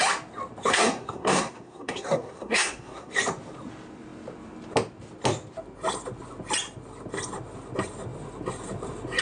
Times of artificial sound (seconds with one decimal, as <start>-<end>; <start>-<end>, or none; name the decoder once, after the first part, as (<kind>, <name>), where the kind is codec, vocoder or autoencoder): 0.7-3.1 (codec, SNAC)